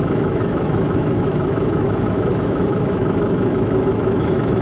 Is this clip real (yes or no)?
no